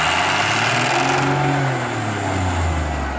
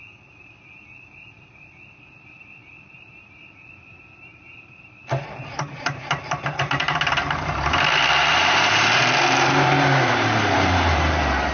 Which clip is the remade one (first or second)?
second